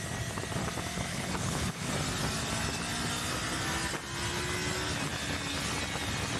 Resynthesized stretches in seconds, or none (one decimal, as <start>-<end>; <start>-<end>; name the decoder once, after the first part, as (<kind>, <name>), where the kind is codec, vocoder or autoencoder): 1.1-1.9 (codec, HILCodec)